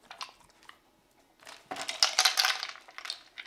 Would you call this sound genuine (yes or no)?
yes